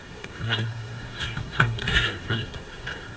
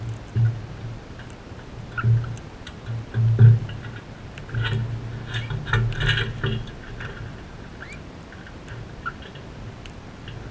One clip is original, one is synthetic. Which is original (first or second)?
second